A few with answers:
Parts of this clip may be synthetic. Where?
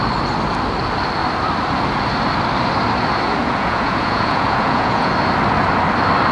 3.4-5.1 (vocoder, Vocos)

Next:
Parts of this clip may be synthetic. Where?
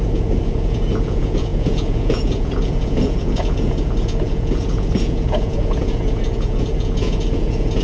0.0-7.8 (vocoder, Vocos)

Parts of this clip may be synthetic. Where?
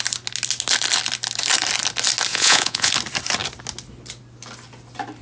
2.3-2.9 (vocoder, Vocos)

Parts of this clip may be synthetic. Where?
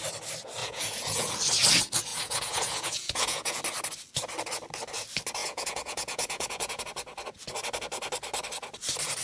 0.6-1.3 (vocoder, Vocos); 2.1-3.6; 5.4-6.8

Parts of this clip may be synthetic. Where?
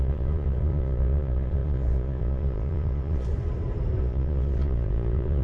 0.0-3.3 (vocoder, Vocos); 4.0-5.4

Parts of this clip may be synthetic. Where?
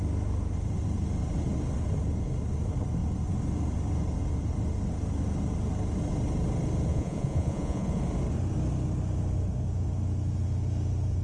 6.9-8.0 (vocoder, Vocos)